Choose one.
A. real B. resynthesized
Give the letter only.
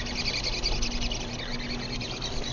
A